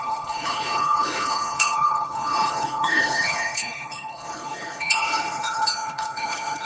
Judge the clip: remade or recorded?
remade